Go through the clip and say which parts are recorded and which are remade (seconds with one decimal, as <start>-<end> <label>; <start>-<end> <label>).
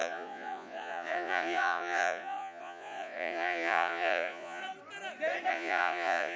0.0-4.6 remade; 4.6-5.5 recorded; 5.5-6.4 remade